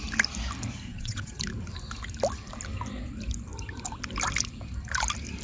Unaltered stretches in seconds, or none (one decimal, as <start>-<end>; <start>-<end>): 0.0-0.9; 1.4-5.4